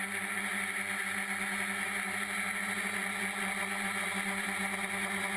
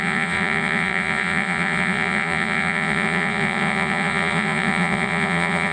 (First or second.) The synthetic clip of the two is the second